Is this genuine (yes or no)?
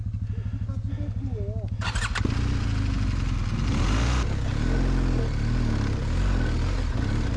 yes